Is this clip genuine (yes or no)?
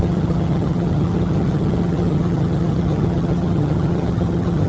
no